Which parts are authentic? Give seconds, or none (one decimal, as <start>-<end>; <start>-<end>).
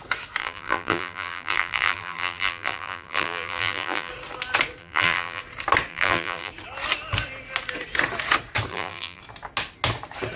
0.0-0.4; 4.1-4.8; 5.4-5.9; 6.5-8.7; 9.2-10.4